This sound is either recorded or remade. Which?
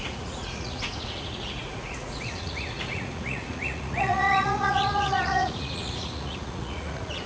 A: remade